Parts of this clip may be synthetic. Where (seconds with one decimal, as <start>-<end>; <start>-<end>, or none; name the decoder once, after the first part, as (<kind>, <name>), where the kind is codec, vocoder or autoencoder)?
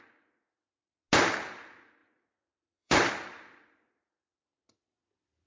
2.0-3.1 (vocoder, BigVGAN v2)